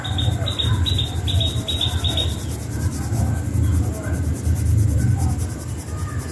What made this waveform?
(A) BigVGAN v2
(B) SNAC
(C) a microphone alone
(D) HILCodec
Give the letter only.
C